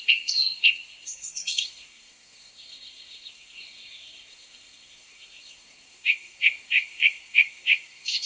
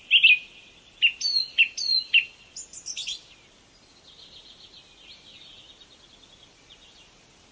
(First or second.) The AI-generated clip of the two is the first